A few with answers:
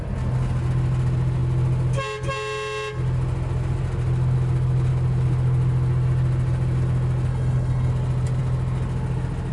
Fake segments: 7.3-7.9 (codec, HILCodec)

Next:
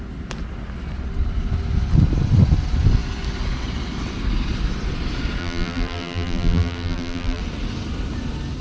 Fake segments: 5.4-7.4 (vocoder, BigVGAN v2)

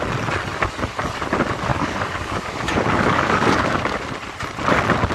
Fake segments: 1.7-4.0 (codec, DAC)

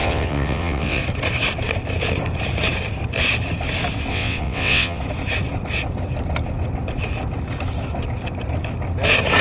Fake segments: 0.0-1.0 (vocoder, WaveNeXt); 4.1-5.0